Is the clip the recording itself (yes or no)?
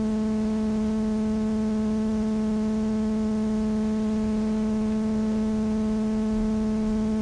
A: yes